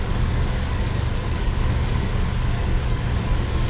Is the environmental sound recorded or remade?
remade